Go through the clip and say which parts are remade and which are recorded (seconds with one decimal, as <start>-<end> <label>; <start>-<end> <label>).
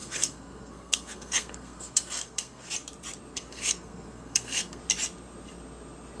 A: 0.0-2.7 remade; 2.7-3.3 recorded; 3.3-4.8 remade; 4.8-6.2 recorded